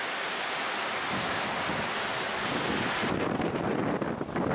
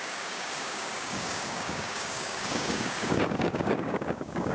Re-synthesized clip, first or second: second